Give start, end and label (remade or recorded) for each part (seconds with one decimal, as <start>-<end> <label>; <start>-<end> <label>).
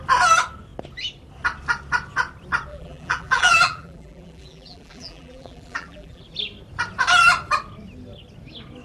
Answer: 0.0-2.7 recorded; 2.7-6.2 remade; 6.2-8.8 recorded